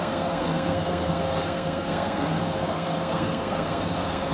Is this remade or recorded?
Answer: remade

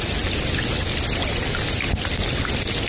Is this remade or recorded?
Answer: recorded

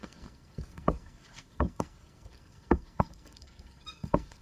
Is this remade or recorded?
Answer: remade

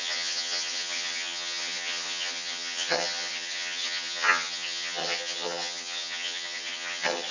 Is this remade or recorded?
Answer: remade